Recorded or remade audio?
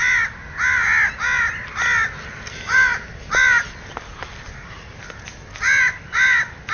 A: recorded